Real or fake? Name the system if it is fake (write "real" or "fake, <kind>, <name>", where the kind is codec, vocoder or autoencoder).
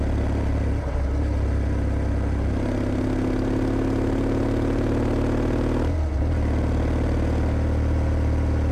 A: real